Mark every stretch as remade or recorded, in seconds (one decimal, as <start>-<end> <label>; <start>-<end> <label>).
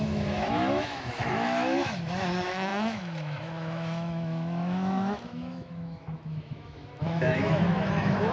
0.0-8.3 remade